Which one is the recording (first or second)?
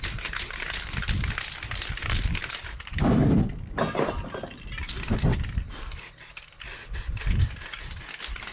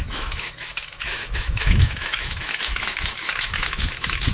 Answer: first